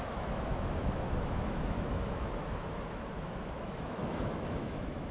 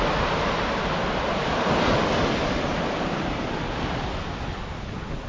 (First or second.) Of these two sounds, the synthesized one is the first